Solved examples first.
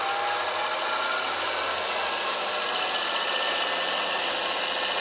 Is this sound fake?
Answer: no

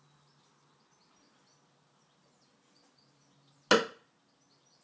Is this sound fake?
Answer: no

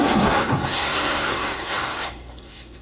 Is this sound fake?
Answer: yes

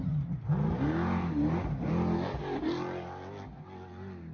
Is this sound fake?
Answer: no